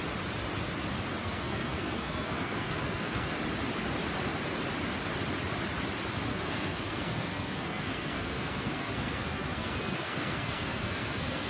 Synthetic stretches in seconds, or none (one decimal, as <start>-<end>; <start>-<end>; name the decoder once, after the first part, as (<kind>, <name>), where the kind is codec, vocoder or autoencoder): 1.2-3.4 (codec, SNAC); 6.3-11.5